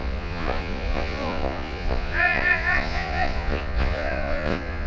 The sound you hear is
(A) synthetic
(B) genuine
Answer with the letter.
A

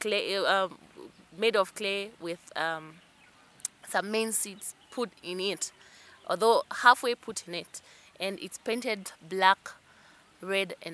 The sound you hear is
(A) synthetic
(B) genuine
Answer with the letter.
B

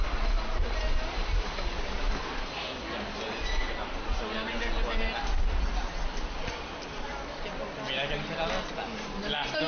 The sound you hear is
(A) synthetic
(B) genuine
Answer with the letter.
B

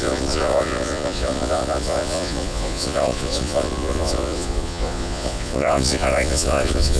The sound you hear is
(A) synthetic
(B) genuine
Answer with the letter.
A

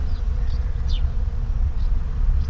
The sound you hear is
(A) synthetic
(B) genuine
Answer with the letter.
A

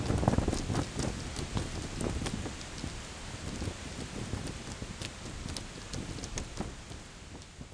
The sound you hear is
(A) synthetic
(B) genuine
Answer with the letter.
B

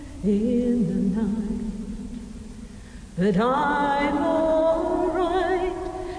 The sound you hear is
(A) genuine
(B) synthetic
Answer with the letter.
A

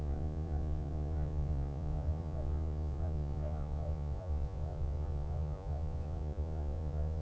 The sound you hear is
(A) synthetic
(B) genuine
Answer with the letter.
A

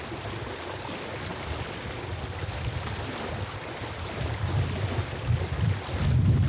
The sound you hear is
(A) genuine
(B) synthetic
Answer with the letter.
A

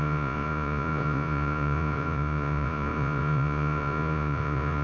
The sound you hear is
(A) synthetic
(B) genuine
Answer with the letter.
A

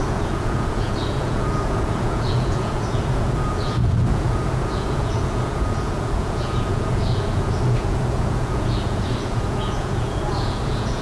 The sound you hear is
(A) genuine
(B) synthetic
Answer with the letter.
B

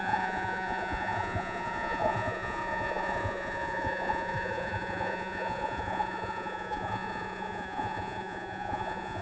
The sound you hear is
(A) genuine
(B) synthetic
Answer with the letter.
B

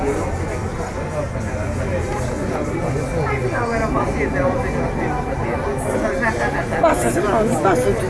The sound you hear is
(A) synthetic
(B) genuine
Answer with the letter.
B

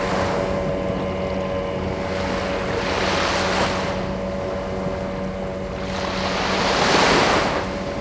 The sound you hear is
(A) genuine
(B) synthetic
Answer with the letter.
A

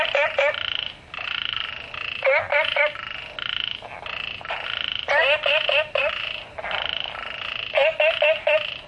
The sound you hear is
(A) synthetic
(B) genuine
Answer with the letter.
B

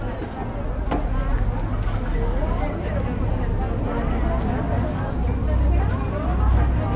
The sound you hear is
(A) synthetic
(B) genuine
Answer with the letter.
B